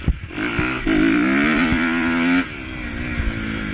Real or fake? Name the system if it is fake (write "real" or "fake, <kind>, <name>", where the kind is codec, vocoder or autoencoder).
real